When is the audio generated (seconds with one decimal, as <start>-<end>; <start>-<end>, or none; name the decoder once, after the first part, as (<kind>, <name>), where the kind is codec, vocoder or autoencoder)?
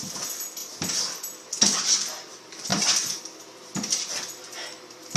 2.7-3.2 (vocoder, BigVGAN v2)